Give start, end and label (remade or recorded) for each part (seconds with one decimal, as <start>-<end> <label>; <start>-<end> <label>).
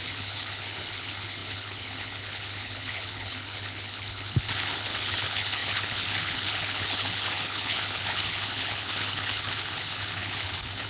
0.0-10.9 remade